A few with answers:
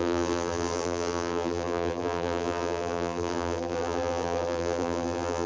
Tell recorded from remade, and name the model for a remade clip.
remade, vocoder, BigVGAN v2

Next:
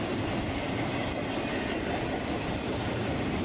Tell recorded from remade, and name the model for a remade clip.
recorded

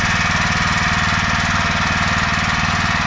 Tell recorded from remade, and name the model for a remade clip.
recorded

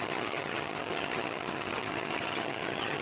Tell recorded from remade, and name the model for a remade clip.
remade, vocoder, HiFi-GAN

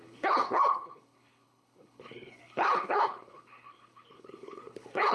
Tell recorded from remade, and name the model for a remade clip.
remade, codec, HILCodec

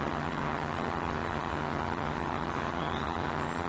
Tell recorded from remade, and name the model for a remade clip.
remade, vocoder, HiFi-GAN